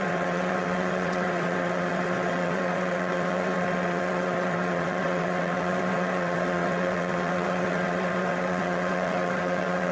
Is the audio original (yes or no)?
no